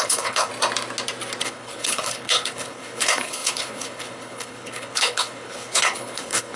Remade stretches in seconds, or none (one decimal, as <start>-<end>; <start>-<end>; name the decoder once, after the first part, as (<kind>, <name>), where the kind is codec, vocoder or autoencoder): 0.0-0.5 (codec, HILCodec); 1.4-6.6